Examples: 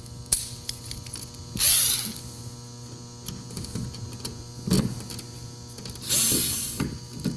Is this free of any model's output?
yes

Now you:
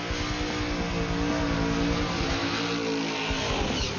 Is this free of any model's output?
yes